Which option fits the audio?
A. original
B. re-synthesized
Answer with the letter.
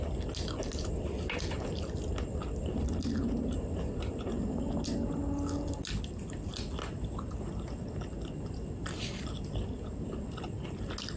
A